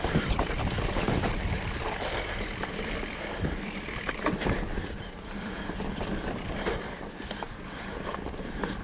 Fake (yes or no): yes